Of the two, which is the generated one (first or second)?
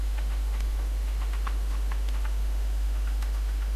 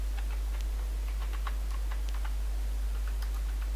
first